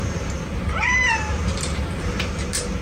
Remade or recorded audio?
remade